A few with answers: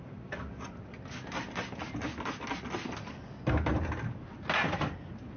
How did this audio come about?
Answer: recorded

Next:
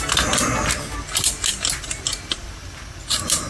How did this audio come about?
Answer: recorded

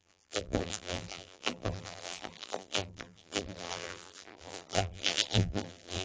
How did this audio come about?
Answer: remade